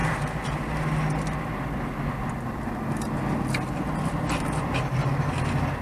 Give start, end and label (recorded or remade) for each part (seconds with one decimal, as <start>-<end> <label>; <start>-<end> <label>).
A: 0.0-5.8 recorded